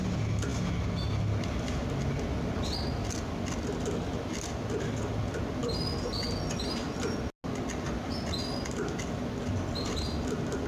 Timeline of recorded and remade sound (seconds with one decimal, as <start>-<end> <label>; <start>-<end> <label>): 0.0-10.7 recorded